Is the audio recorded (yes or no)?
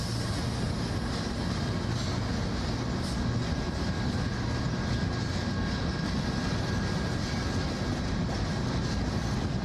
yes